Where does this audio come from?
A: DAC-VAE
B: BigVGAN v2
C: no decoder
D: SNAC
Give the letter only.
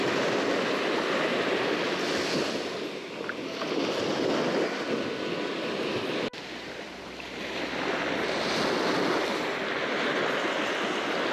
C